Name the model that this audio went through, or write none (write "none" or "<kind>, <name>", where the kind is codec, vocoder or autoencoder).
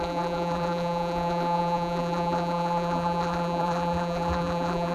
vocoder, BigVGAN v2